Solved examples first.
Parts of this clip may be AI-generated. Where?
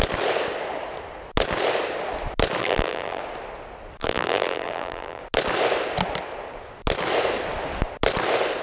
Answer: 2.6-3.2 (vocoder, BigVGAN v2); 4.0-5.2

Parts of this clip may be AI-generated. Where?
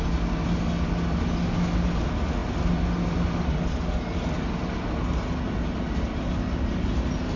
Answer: none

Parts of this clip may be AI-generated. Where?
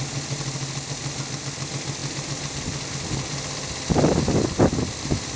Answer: none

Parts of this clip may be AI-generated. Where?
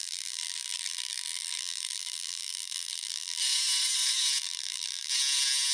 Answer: 0.0-3.4 (vocoder, BigVGAN v2); 4.4-5.1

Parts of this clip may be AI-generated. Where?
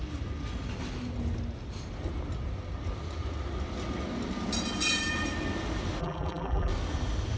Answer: 6.0-6.7 (vocoder, BigVGAN v2)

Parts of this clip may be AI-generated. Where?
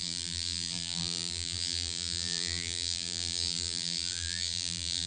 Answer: 0.0-5.1 (vocoder, BigVGAN v2)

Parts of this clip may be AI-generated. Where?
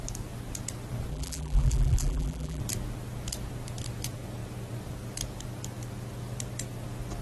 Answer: 1.1-2.6 (vocoder, BigVGAN v2)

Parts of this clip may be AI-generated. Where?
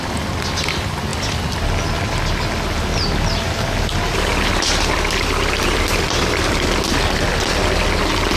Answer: 4.3-7.8 (vocoder, BigVGAN v2)